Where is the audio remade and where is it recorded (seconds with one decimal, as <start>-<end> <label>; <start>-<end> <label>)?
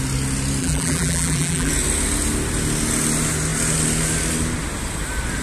0.0-0.6 recorded; 0.6-1.7 remade; 1.7-5.4 recorded